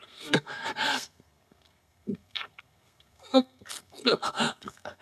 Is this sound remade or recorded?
remade